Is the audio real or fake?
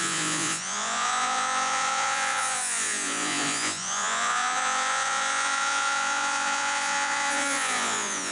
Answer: fake